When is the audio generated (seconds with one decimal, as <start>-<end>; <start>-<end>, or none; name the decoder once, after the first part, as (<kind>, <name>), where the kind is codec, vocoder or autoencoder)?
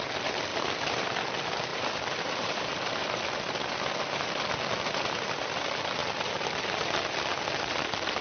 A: 0.5-1.1 (vocoder, BigVGAN v2); 1.7-3.2